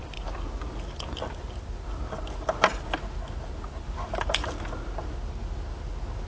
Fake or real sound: real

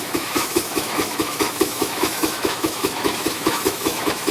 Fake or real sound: fake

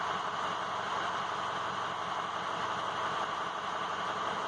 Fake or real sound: real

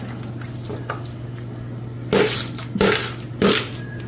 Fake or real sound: real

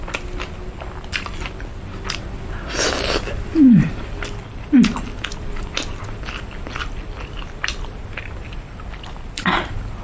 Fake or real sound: real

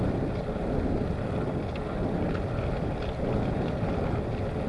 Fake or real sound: real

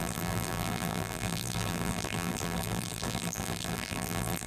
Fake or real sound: fake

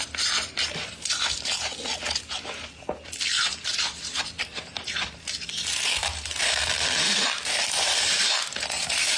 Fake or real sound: fake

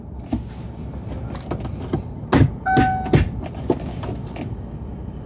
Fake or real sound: real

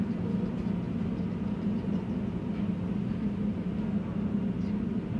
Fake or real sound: real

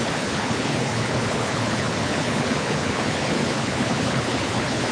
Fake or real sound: fake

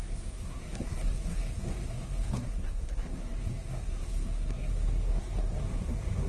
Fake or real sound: fake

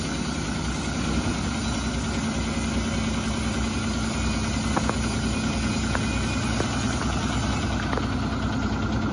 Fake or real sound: real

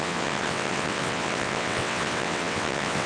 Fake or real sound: fake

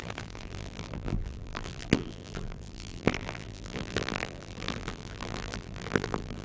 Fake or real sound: fake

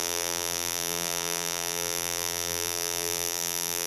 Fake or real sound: fake